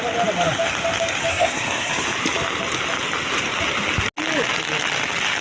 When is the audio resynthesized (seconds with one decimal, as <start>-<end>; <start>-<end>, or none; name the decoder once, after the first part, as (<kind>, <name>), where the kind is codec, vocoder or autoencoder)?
1.3-1.9 (codec, SNAC)